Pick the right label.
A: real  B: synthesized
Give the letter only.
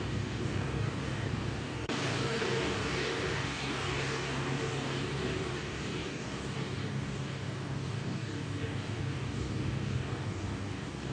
B